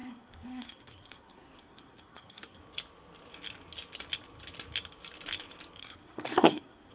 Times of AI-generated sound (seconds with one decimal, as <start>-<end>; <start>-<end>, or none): 0.0-2.6; 5.8-6.9